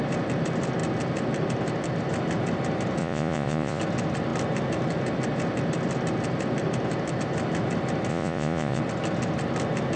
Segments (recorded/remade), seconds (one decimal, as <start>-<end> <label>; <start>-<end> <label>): 0.0-3.0 recorded; 3.0-3.8 remade; 3.8-8.1 recorded; 8.1-8.8 remade; 8.8-10.0 recorded